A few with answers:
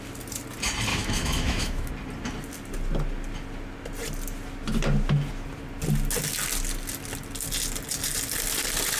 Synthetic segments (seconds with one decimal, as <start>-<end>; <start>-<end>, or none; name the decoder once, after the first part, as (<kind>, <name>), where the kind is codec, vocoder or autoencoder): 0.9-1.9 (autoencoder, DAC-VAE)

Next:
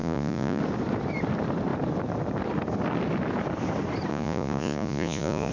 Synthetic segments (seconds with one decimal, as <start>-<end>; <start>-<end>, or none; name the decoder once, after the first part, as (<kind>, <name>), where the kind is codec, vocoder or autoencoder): 0.0-0.6 (vocoder, Vocos); 4.1-5.5

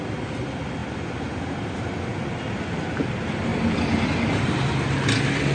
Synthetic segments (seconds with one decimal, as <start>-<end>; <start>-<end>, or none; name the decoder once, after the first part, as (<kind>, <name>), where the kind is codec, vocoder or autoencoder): none

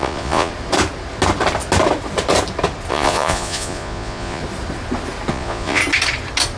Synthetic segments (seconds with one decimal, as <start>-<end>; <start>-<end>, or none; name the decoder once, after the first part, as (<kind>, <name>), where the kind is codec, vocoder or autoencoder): 0.0-0.5 (vocoder, Vocos); 2.9-4.4; 5.3-5.8